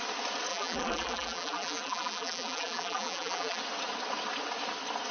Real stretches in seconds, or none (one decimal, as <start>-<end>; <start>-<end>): 0.0-0.5; 3.6-5.1